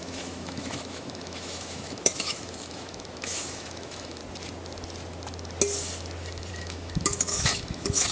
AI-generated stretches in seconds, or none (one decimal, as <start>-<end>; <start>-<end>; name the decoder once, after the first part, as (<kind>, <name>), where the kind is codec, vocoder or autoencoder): 0.0-4.2 (autoencoder, DAC-VAE); 6.5-8.1